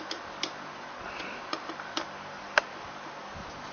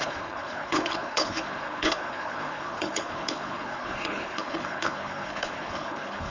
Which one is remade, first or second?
second